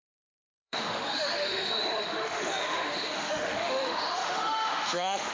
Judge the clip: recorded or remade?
remade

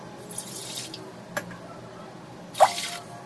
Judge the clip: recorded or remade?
recorded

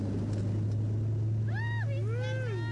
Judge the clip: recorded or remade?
recorded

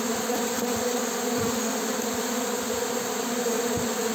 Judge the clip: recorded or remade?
recorded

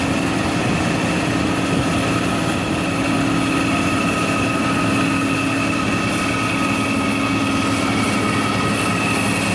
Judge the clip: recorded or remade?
recorded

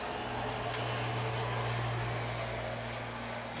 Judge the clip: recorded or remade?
recorded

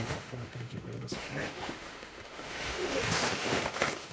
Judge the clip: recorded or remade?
remade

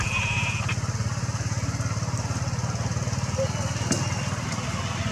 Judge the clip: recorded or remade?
recorded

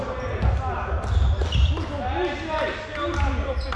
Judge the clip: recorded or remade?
recorded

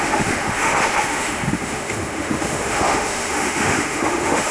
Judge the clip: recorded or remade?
remade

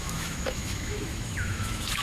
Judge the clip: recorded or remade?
remade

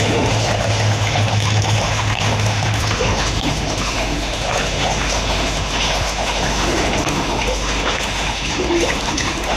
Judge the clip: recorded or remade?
remade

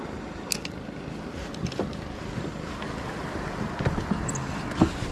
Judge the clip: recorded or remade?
recorded